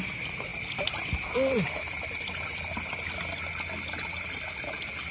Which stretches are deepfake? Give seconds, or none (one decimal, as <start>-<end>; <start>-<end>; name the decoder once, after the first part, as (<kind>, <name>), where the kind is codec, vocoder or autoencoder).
none